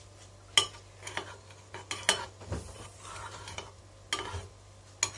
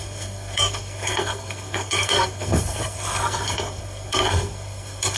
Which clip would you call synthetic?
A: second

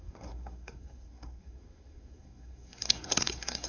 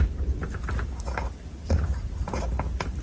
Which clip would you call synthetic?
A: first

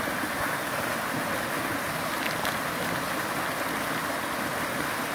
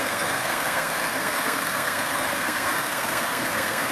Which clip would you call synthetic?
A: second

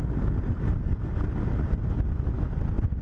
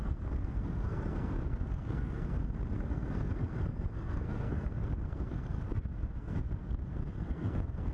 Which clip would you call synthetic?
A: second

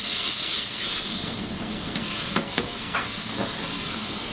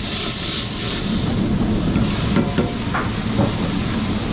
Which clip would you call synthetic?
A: first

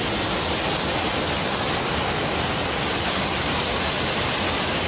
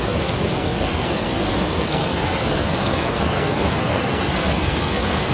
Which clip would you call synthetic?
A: second